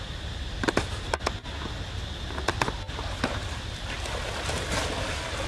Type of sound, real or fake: real